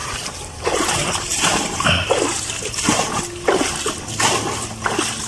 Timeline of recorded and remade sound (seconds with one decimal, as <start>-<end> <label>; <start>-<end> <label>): 0.0-3.2 remade; 3.2-5.3 recorded